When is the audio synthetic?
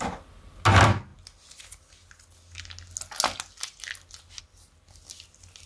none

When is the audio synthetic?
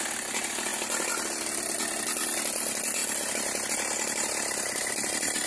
none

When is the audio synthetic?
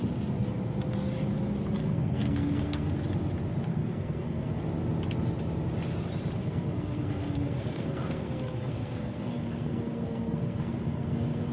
1.8-2.9 (codec, SNAC); 3.7-4.6; 6.4-11.5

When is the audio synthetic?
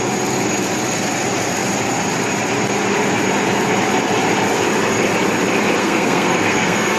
5.8-7.0 (codec, SNAC)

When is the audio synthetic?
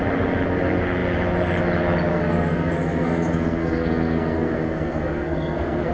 2.1-5.9 (codec, SNAC)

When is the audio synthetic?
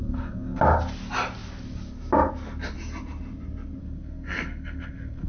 0.0-0.6 (codec, SNAC); 3.8-5.3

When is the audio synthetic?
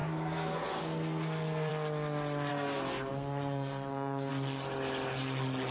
0.0-1.7 (codec, SNAC); 2.5-4.3